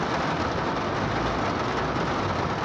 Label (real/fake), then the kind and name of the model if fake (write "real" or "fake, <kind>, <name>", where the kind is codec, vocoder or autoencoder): real